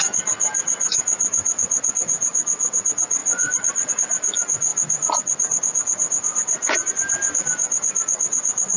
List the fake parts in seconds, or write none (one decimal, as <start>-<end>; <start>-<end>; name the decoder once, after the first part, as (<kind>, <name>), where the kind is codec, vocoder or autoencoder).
3.2-3.9 (vocoder, Vocos)